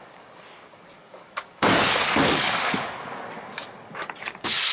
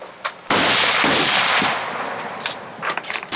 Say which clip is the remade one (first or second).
first